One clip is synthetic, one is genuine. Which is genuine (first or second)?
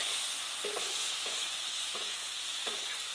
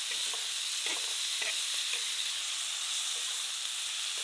second